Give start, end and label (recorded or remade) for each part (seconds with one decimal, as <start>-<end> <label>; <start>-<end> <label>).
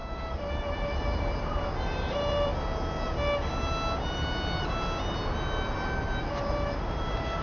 0.0-2.5 remade; 2.5-6.3 recorded; 6.3-7.4 remade